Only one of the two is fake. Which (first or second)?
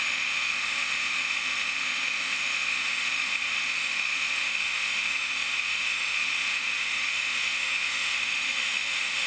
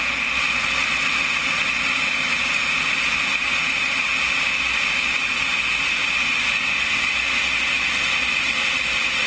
first